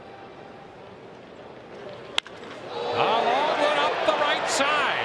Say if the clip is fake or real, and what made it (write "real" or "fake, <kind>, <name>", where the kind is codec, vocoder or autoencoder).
real